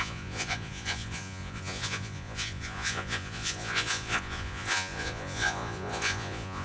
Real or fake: fake